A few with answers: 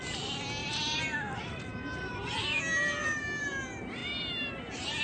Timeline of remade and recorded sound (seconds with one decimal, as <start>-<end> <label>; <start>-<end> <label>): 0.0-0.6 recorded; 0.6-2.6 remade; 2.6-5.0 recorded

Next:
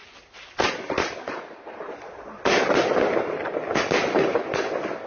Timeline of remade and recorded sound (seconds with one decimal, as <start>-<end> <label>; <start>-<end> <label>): 0.0-5.1 recorded

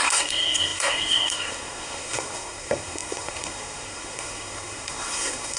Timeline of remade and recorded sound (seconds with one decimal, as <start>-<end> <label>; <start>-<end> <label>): 0.0-5.6 remade

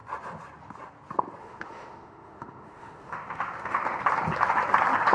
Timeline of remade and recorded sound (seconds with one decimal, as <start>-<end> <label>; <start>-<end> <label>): 0.0-1.4 recorded; 1.4-4.0 remade; 4.0-5.1 recorded

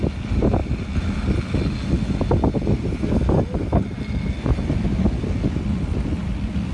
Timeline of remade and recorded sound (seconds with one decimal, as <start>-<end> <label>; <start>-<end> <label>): 0.0-6.7 recorded